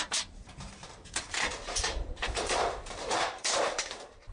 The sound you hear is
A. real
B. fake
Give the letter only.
B